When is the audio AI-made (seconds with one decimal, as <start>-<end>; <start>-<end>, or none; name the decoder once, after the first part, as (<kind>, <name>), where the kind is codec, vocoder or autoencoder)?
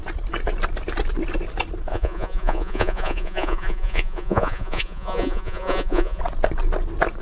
1.9-6.2 (vocoder, Vocos)